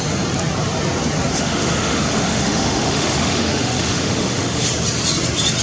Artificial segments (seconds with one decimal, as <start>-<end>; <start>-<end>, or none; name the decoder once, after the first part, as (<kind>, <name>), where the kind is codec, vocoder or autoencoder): 1.3-4.7 (autoencoder, DAC-VAE)